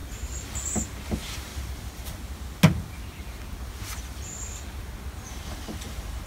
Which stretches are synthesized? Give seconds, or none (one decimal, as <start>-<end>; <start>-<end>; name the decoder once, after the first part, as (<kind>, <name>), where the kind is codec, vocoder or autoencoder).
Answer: 0.7-1.5 (vocoder, BigVGAN v2); 5.3-6.3